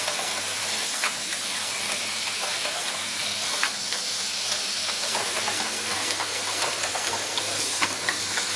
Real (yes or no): no